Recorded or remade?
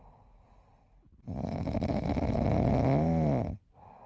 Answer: recorded